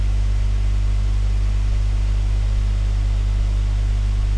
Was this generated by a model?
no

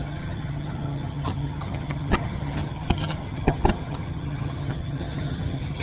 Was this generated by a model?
yes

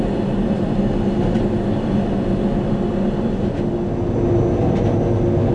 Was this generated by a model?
no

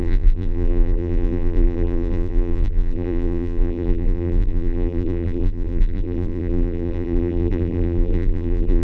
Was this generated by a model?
yes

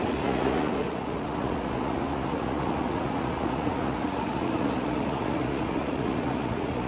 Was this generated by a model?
yes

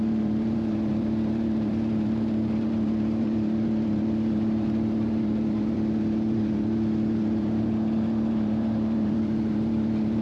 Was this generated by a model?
yes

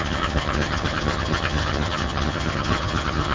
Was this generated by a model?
yes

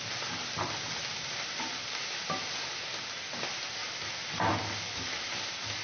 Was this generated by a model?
no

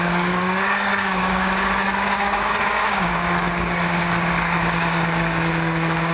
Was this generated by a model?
yes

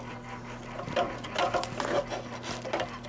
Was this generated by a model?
no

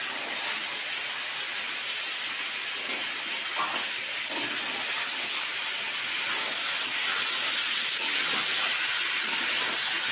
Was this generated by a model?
no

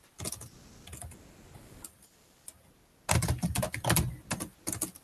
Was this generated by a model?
no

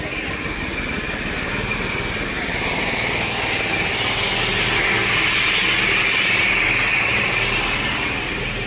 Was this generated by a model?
no